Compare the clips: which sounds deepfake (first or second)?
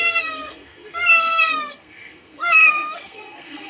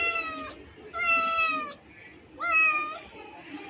first